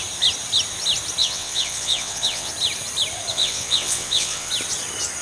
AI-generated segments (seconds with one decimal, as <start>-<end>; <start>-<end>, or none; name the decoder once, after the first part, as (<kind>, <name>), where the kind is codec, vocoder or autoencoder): 1.2-2.5 (vocoder, WaveNeXt); 3.3-4.5